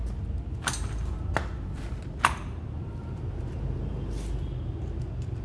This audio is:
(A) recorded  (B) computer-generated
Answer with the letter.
A